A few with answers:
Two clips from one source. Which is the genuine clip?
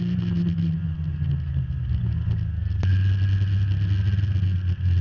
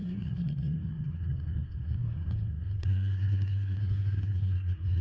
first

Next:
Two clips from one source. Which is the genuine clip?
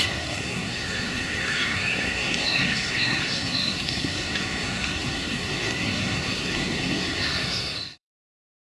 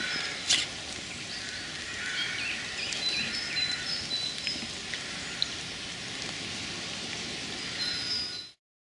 second